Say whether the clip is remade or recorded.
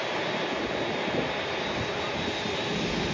recorded